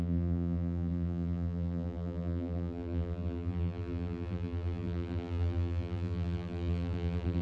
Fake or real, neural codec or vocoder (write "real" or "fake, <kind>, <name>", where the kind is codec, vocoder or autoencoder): fake, vocoder, BigVGAN v2